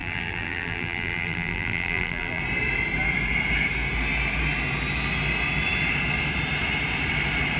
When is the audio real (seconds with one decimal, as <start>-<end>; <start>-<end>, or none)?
2.4-7.6